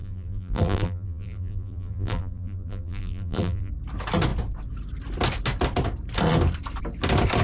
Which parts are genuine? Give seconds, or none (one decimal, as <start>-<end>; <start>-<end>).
3.7-7.4

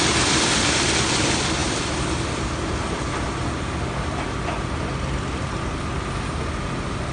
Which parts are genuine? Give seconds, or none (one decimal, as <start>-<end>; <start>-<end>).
0.0-7.1